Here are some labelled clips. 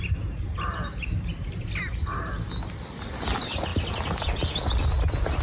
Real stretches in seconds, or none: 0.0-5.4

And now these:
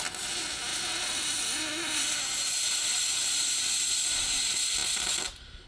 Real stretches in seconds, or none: 0.0-5.7